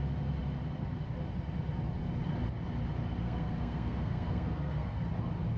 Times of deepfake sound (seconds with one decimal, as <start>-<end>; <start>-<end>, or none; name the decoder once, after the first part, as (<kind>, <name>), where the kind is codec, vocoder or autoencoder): 3.2-5.1 (codec, SNAC)